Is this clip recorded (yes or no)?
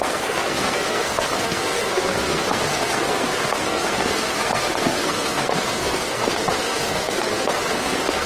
no